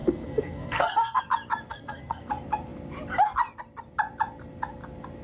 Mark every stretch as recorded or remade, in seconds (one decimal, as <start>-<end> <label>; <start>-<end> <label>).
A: 0.0-1.2 remade; 1.2-1.7 recorded; 1.7-2.3 remade; 2.3-5.2 recorded

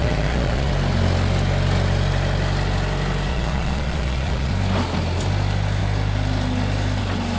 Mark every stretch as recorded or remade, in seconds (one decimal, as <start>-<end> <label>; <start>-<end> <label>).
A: 0.0-0.7 remade; 0.7-3.3 recorded; 3.3-4.5 remade; 4.5-7.4 recorded

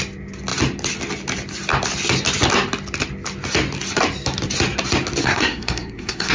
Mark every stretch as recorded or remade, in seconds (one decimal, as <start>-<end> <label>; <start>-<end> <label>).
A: 0.0-5.2 recorded; 5.2-6.3 remade

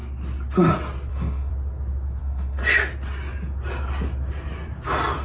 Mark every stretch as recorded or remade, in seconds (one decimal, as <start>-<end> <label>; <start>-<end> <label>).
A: 0.0-1.1 recorded; 1.1-1.5 remade; 1.5-2.2 recorded; 2.2-2.6 remade; 2.6-5.2 recorded

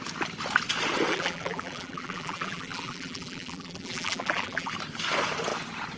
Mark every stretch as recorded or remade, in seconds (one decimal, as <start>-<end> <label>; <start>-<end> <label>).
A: 0.0-1.1 recorded; 1.1-4.7 remade; 4.7-6.0 recorded

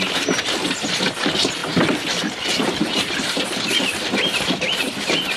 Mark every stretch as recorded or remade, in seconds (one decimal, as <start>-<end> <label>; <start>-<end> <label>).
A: 0.0-1.6 recorded; 1.6-4.8 remade; 4.8-5.4 recorded